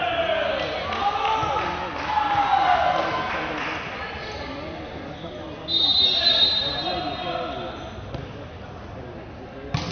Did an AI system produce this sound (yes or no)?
no